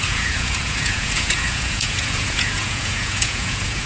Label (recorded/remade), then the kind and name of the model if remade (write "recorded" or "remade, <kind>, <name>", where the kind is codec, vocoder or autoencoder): remade, vocoder, Vocos